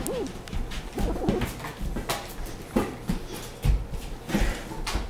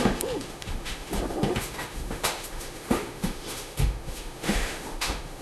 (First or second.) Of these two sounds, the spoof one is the second